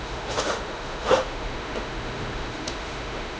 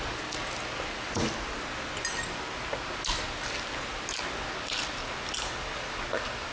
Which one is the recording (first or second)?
second